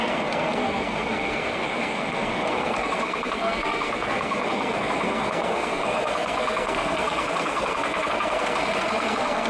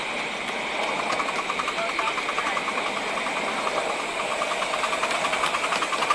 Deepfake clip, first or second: first